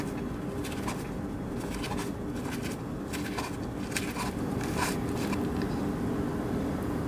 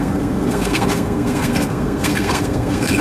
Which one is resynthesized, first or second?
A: second